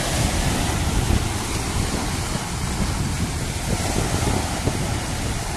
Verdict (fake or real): real